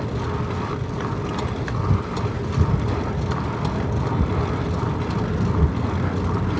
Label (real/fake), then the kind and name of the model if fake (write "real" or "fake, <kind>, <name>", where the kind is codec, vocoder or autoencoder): real